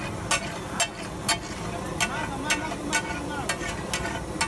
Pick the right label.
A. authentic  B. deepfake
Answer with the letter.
A